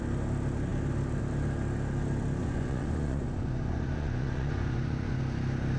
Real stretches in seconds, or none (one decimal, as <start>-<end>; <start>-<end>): 0.0-2.4; 5.2-5.8